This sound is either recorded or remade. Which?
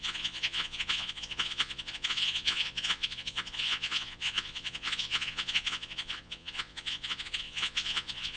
remade